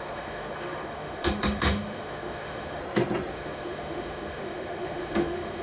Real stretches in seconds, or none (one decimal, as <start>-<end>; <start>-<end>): 2.8-3.3